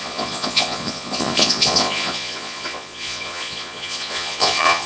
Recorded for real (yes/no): no